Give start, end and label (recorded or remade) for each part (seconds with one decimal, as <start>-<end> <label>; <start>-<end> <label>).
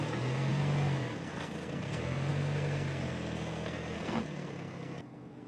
0.0-5.5 remade